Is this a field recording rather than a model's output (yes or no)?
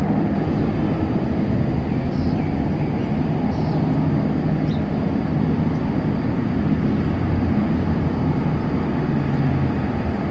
yes